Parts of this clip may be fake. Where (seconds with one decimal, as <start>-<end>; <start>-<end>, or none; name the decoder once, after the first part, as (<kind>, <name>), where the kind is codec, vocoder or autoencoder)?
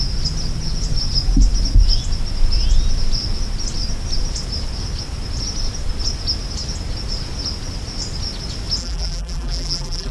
8.8-10.1 (vocoder, BigVGAN v2)